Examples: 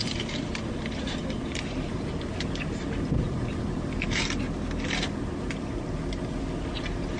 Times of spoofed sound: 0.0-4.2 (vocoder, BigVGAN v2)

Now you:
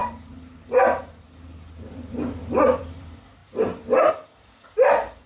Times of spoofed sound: 2.6-3.4 (vocoder, BigVGAN v2); 4.1-5.3

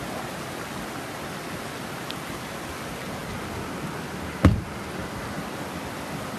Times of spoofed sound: none